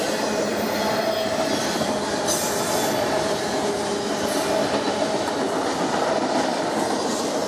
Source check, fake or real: real